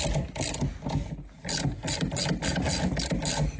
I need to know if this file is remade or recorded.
recorded